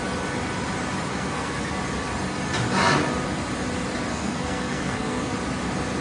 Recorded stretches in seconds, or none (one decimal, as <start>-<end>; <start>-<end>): 0.0-1.1; 1.7-4.1; 5.3-6.0